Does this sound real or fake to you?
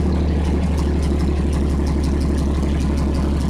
real